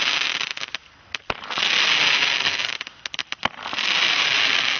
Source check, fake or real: real